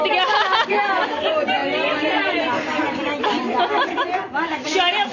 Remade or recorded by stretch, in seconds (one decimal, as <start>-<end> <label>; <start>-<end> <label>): 0.0-5.1 remade